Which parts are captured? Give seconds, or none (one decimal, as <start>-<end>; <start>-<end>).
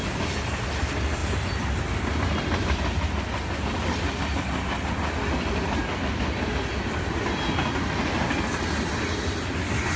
0.0-10.0